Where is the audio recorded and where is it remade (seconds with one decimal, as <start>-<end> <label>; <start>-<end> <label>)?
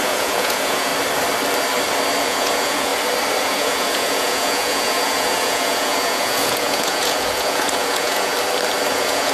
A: 0.0-0.9 remade; 0.9-2.2 recorded; 2.2-2.9 remade; 2.9-3.4 recorded; 3.4-8.3 remade; 8.3-8.9 recorded; 8.9-9.3 remade